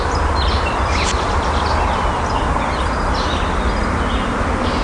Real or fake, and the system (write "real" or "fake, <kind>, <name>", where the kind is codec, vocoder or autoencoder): real